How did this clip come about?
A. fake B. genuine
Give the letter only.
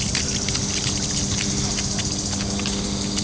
B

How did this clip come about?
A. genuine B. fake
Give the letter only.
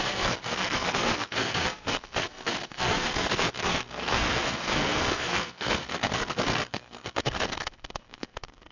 B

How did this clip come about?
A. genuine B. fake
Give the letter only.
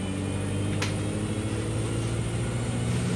A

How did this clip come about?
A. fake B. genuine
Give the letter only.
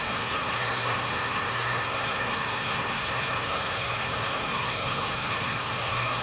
A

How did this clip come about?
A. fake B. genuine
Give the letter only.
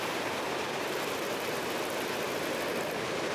B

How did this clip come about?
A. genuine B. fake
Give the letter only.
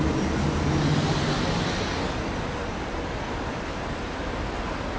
A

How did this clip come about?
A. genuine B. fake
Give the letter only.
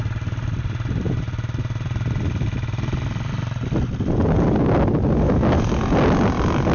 A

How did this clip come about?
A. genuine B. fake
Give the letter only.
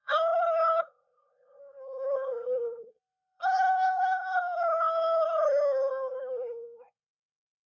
B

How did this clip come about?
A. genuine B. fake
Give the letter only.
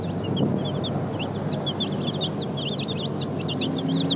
A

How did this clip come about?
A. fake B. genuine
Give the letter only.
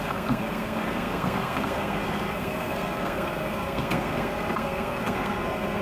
A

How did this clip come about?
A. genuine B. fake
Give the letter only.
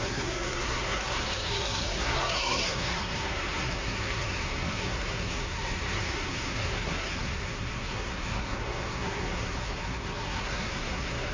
B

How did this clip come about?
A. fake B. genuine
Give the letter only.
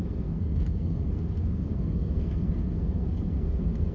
A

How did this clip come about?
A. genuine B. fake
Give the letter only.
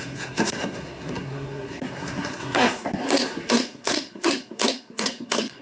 B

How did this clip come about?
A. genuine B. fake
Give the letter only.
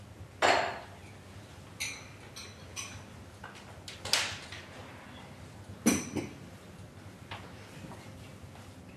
A